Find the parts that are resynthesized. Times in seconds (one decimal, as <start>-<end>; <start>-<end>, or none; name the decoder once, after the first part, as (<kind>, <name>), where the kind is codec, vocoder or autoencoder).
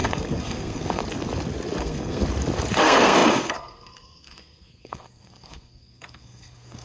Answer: 0.0-1.0 (codec, SNAC); 1.8-2.2; 2.8-6.8